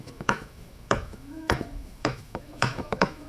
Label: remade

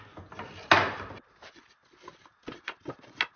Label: recorded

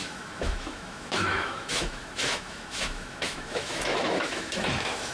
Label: remade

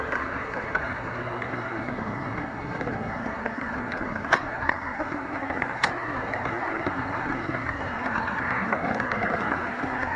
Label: remade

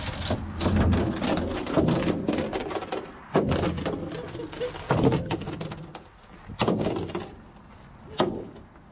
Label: recorded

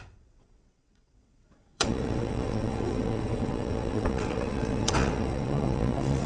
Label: remade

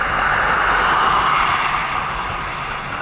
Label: recorded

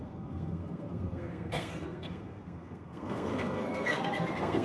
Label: remade